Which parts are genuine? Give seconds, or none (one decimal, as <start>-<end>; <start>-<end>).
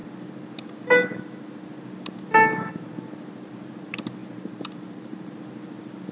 0.0-4.2; 5.4-6.1